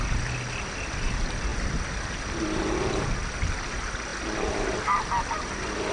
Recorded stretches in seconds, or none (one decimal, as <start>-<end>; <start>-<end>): 0.0-5.9